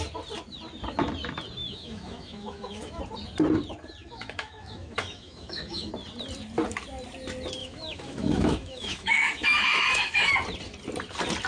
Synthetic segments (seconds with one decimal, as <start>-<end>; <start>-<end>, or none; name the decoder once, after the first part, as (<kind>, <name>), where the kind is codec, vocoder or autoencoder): 1.6-3.0 (autoencoder, DAC-VAE); 4.0-5.9; 7.6-10.3